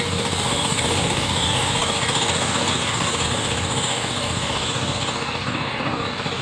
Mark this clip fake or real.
fake